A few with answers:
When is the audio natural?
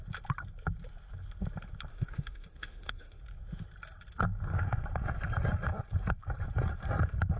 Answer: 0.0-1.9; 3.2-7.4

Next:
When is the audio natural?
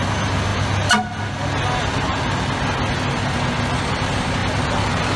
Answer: 0.0-5.2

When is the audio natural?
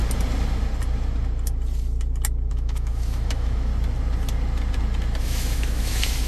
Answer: 0.0-2.5; 3.7-5.2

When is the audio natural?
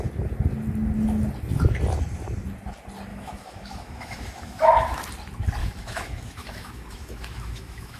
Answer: 0.0-3.1; 5.0-5.6